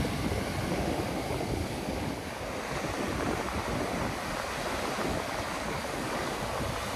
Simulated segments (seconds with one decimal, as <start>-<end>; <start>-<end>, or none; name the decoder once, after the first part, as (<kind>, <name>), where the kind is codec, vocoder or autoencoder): 0.7-2.4 (codec, DAC); 5.1-6.6